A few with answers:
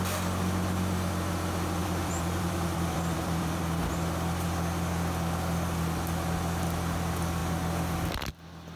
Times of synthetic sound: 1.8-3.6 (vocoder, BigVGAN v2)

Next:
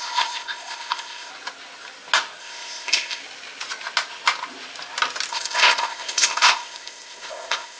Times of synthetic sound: 0.0-1.3 (codec, ZipCodec); 2.4-3.2; 5.3-7.8

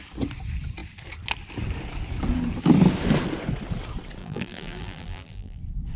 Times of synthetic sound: 4.2-5.6 (vocoder, BigVGAN v2)

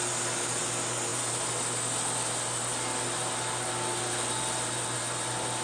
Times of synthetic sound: none

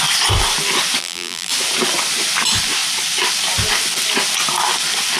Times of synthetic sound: 1.0-1.5 (vocoder, BigVGAN v2)